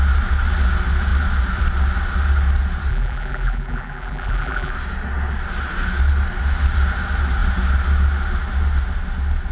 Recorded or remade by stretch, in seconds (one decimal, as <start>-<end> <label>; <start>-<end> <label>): 0.0-2.9 recorded; 2.9-4.7 remade; 4.7-9.5 recorded